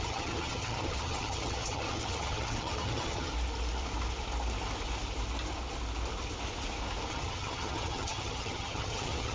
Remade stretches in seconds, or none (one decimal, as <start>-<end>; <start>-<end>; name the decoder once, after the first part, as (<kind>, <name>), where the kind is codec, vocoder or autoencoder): 0.0-3.3 (vocoder, HiFi-GAN); 7.1-9.3